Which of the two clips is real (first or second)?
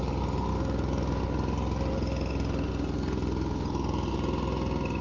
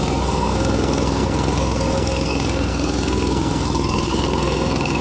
first